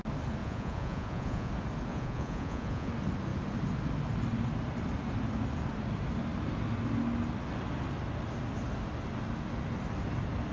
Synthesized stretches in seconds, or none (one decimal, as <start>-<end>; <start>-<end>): 0.4-1.5; 1.9-2.9